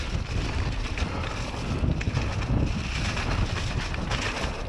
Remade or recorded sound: recorded